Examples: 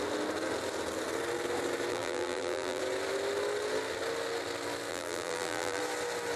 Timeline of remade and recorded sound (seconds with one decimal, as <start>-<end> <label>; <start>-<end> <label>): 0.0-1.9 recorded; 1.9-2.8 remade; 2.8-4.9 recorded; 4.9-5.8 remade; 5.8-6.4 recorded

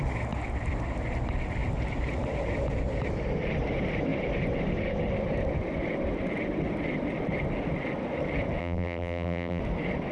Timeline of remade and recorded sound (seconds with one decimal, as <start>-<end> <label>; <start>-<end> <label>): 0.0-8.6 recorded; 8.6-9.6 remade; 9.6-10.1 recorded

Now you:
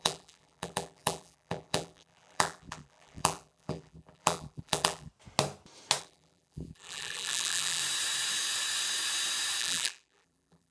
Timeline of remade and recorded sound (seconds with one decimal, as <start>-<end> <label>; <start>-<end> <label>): 0.0-5.1 remade; 5.1-6.0 recorded; 6.0-7.8 remade; 7.8-9.6 recorded; 9.6-10.7 remade